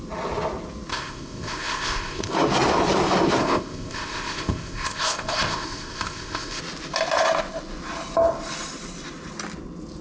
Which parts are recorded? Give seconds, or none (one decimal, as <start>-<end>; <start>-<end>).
0.0-0.9; 2.3-3.4; 6.6-10.0